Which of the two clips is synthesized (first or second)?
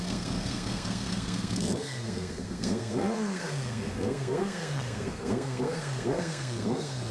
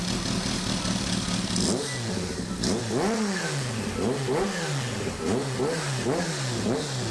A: first